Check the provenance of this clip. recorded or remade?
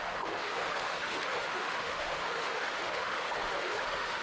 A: remade